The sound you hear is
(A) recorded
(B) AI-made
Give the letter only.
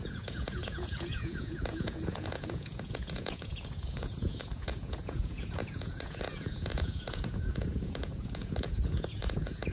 B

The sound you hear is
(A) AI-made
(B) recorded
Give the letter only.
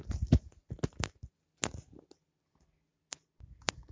B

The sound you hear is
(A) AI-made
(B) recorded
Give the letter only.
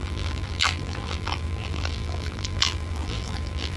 A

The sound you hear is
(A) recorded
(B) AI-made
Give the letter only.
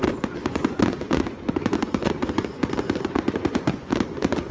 B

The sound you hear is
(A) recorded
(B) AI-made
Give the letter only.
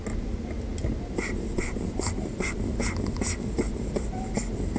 A